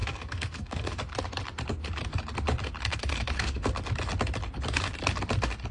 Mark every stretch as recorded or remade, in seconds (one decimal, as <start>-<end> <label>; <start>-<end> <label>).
0.0-1.0 remade; 1.0-2.8 recorded; 2.8-3.7 remade; 3.7-5.7 recorded